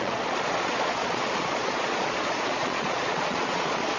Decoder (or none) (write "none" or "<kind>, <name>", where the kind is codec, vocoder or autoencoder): vocoder, Vocos